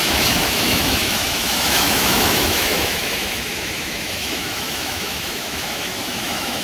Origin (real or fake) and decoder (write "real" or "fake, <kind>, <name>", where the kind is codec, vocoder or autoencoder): fake, autoencoder, DAC-VAE